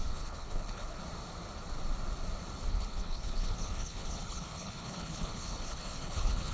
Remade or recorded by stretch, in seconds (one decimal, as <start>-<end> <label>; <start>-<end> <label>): 0.0-1.0 remade; 1.0-2.7 recorded; 2.7-6.5 remade